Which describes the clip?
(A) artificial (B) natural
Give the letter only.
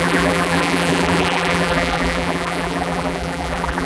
A